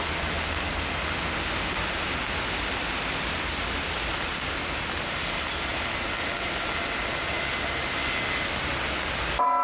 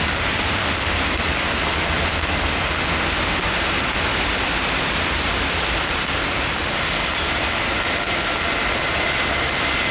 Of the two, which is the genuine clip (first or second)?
first